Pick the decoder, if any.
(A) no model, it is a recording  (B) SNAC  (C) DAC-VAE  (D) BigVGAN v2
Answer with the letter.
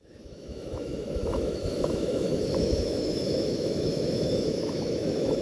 C